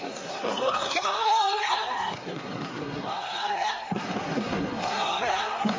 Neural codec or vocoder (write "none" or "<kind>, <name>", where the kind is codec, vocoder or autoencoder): codec, SNAC